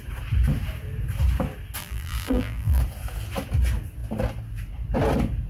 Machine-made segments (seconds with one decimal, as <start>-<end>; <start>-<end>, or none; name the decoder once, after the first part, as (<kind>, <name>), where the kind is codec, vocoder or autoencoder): 1.8-2.8 (vocoder, BigVGAN v2)